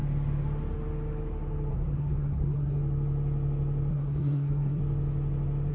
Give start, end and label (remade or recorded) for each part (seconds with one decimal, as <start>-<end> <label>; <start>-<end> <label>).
0.0-1.7 recorded; 1.7-2.8 remade; 2.8-3.9 recorded; 3.9-4.8 remade; 4.8-5.7 recorded